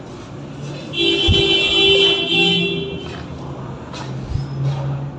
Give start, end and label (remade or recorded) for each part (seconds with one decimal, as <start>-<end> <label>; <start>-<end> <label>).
0.0-5.2 recorded